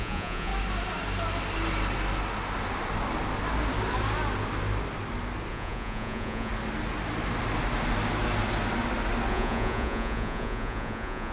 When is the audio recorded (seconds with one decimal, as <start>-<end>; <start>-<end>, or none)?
0.5-5.5; 6.5-9.3